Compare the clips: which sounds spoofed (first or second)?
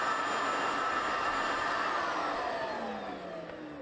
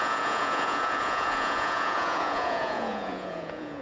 second